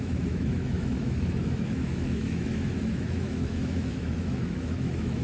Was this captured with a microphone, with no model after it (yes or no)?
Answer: no